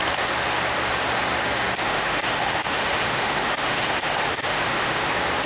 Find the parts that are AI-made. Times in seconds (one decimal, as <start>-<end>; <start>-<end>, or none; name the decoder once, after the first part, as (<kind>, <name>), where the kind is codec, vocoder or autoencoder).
1.8-5.1 (autoencoder, DAC-VAE)

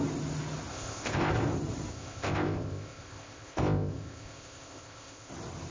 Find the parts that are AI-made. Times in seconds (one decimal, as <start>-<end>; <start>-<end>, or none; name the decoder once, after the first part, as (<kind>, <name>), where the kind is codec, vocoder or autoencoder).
0.7-1.3 (codec, ZipCodec); 1.9-5.3

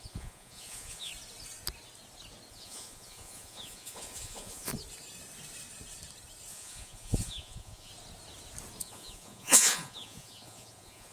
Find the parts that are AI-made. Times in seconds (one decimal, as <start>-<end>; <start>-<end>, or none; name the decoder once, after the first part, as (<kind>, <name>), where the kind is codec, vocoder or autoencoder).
0.0-1.1 (vocoder, Vocos); 2.5-4.7; 6.5-7.9; 8.8-11.1

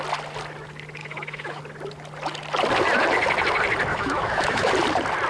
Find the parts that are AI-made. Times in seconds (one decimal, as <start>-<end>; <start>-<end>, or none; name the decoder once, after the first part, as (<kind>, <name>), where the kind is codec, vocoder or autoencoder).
1.0-1.6 (autoencoder, DAC-VAE); 3.9-4.7